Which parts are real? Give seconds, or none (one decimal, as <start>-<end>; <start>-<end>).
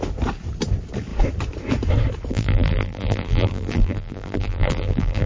0.0-2.3